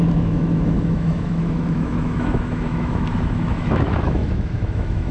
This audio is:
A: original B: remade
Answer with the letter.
B